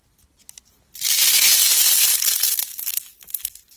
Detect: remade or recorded recorded